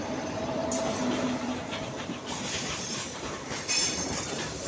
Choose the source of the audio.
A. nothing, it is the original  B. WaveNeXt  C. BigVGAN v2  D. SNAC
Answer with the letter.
C